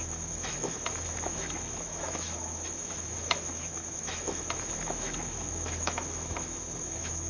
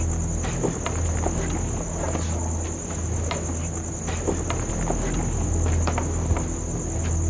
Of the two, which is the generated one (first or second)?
first